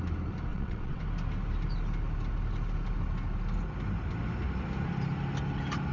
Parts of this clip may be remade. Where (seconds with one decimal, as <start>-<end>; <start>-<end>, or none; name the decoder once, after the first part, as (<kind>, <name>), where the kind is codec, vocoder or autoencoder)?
0.5-1.0 (vocoder, WaveNeXt)